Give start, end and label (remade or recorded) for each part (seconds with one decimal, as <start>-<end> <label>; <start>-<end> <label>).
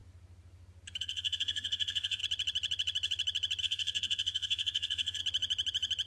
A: 0.0-1.0 recorded; 1.0-2.2 remade; 2.2-3.6 recorded; 3.6-5.2 remade; 5.2-6.1 recorded